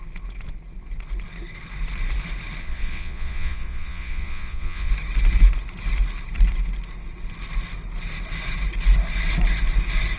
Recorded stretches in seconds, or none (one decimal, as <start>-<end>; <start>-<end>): 0.0-2.6; 4.9-10.2